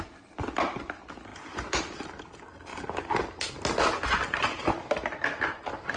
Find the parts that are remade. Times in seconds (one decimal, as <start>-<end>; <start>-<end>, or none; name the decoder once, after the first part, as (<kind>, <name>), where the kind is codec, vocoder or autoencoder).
none